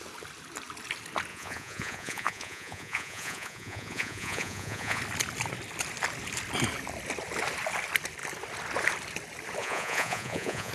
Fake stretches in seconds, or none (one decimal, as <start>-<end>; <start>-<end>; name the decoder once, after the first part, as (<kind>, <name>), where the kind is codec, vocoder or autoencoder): 1.3-5.0 (vocoder, Vocos); 9.6-10.7